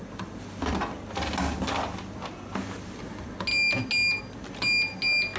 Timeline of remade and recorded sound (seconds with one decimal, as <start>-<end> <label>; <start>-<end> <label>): 0.0-5.4 recorded